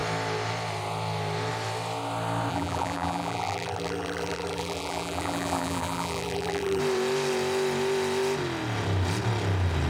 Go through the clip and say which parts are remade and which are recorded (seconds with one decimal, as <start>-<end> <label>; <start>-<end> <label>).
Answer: 0.0-2.5 recorded; 2.5-6.8 remade; 6.8-9.9 recorded